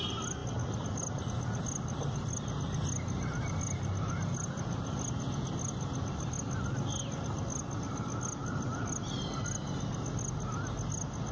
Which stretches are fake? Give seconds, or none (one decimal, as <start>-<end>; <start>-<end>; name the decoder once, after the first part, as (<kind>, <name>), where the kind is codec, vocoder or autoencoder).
none